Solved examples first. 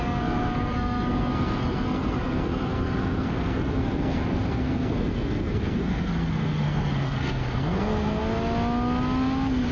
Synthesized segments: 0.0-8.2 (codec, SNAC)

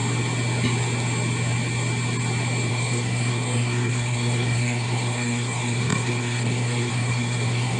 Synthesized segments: 2.7-7.8 (codec, SNAC)

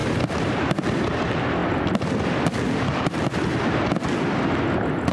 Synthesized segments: none

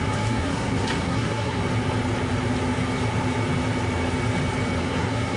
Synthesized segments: 0.0-1.6 (codec, SNAC); 4.8-5.4

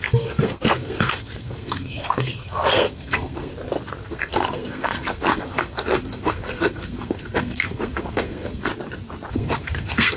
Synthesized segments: 0.0-3.5 (codec, SNAC); 4.1-8.7; 9.3-10.2

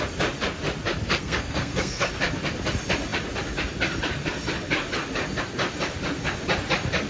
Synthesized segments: 1.2-2.1 (codec, SNAC)

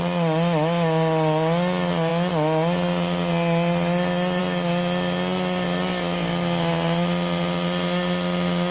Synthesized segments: none

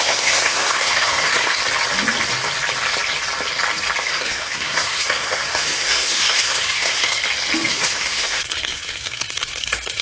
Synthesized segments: 0.0-1.6 (codec, SNAC); 4.0-7.2; 7.7-10.0